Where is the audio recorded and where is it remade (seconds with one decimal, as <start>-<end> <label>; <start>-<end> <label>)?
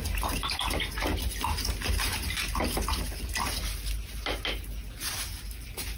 0.0-6.0 recorded